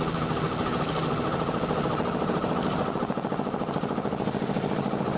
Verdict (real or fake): real